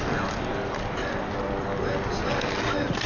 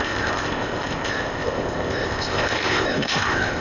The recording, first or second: first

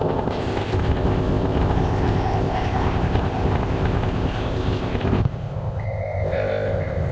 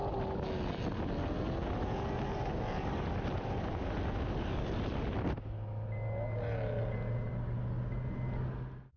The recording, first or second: second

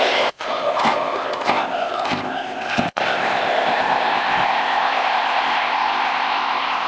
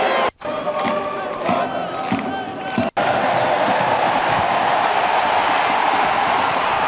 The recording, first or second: second